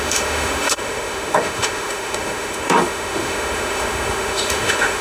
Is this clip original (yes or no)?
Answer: no